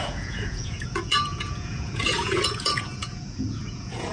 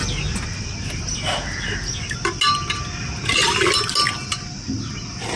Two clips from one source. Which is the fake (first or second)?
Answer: first